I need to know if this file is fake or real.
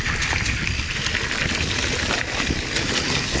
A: real